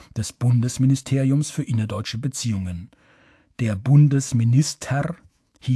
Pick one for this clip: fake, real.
fake